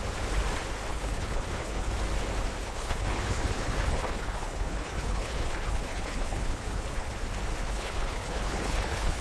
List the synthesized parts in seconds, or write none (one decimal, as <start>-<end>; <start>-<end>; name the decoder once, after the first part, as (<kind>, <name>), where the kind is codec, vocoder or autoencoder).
0.9-1.9 (codec, HILCodec); 2.6-7.1; 7.6-9.2